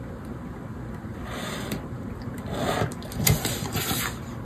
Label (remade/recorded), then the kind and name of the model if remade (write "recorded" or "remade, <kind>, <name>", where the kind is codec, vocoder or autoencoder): remade, vocoder, BigVGAN v2